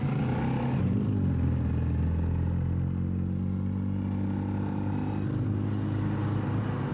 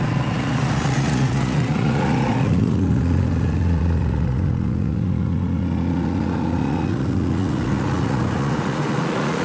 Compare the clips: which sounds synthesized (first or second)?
second